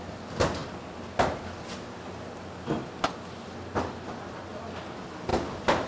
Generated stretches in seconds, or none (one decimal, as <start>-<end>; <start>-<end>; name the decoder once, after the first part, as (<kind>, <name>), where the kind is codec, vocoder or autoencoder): none